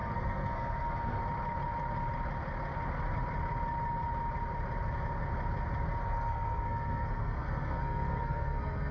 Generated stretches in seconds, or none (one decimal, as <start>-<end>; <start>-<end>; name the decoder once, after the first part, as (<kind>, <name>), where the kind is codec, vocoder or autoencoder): 0.0-1.2 (codec, SNAC); 6.0-8.9